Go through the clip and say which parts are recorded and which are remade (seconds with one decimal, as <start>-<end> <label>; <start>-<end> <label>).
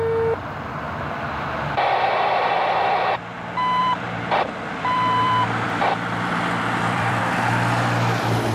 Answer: 0.0-3.8 recorded; 3.8-7.2 remade; 7.2-8.5 recorded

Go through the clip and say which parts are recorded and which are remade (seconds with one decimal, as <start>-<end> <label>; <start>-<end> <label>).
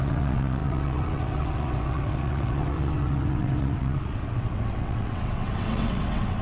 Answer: 0.0-6.4 remade